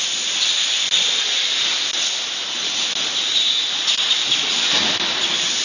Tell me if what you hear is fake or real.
real